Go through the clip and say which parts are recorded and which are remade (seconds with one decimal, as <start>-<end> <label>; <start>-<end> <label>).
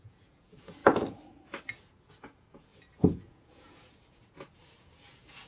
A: 0.0-0.8 remade; 0.8-1.7 recorded; 1.7-5.5 remade